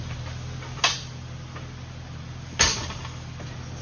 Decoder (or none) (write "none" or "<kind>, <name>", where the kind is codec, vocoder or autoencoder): none